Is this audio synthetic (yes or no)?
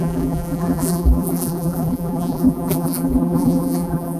yes